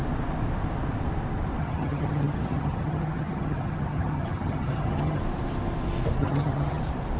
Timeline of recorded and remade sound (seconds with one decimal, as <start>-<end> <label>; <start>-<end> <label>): 0.0-1.6 recorded; 1.6-5.2 remade; 5.2-6.2 recorded; 6.2-6.8 remade; 6.8-7.2 recorded